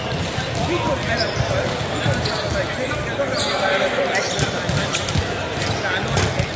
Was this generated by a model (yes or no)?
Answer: no